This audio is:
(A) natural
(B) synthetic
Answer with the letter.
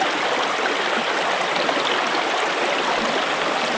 A